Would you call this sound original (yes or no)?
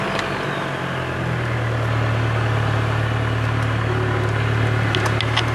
yes